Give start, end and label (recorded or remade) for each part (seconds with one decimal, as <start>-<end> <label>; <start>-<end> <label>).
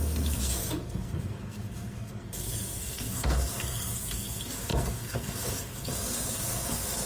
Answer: 0.0-7.1 remade